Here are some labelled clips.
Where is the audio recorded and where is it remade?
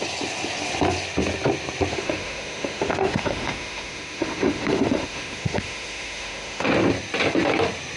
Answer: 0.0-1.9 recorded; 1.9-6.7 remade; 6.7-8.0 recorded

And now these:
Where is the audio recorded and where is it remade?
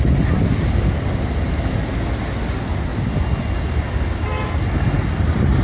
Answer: 0.0-5.6 recorded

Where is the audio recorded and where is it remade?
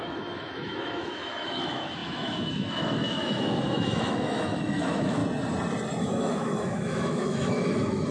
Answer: 0.0-5.2 remade; 5.2-6.0 recorded; 6.0-8.1 remade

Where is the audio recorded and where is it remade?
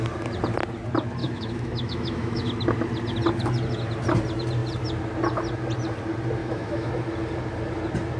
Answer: 0.0-1.2 recorded; 1.2-2.5 remade; 2.5-6.4 recorded; 6.4-6.9 remade; 6.9-8.2 recorded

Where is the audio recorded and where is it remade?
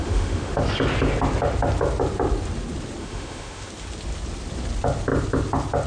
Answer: 0.0-0.6 remade; 0.6-3.0 recorded; 3.0-3.7 remade; 3.7-5.9 recorded